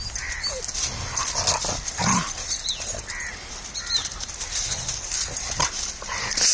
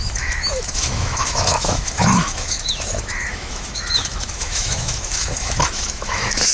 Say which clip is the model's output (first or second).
second